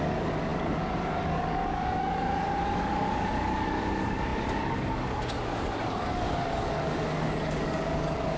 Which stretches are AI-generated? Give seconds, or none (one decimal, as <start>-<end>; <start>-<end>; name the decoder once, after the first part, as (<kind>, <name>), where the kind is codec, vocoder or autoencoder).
0.0-8.4 (codec, DAC)